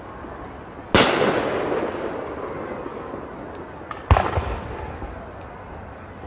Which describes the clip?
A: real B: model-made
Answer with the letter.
A